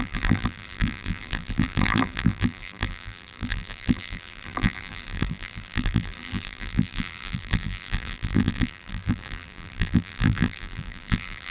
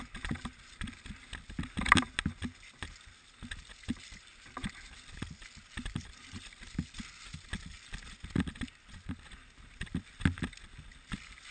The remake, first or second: first